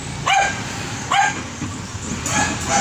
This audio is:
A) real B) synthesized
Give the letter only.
A